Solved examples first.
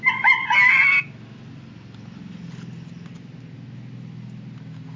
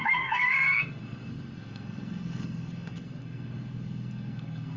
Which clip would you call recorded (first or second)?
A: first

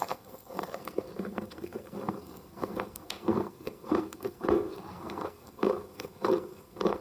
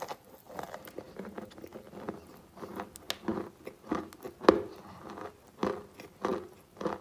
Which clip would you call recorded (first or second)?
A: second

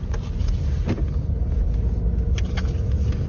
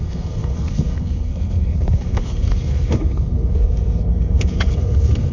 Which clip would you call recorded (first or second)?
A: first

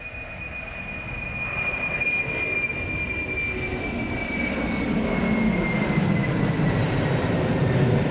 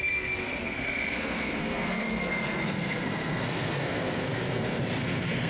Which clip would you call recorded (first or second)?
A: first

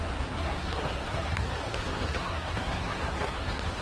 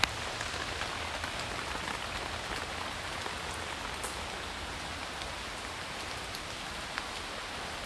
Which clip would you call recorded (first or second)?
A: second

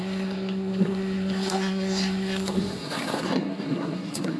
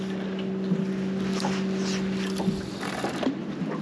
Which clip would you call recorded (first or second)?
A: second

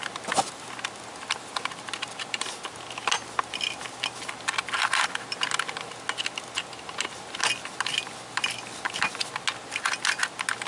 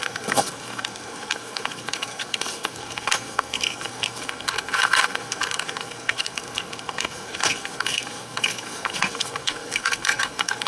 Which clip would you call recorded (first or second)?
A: first